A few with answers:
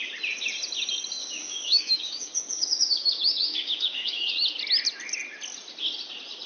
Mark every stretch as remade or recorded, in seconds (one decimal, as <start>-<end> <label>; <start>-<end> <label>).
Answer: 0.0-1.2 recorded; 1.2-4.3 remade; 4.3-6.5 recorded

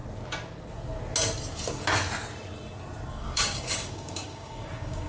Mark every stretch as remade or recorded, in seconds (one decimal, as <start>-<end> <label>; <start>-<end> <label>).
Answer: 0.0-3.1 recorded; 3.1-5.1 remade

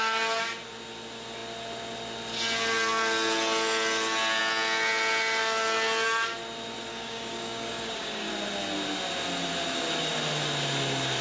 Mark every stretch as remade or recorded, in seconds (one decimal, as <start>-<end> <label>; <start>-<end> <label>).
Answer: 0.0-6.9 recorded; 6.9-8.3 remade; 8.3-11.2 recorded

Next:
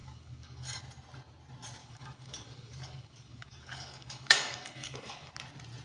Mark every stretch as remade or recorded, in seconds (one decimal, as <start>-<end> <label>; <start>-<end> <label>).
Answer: 0.0-0.8 remade; 0.8-1.8 recorded; 1.8-5.3 remade; 5.3-5.8 recorded